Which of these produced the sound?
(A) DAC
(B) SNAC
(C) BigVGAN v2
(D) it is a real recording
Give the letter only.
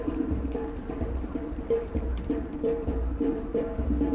C